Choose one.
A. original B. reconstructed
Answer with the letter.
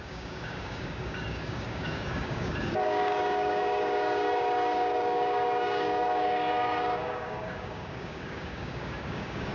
B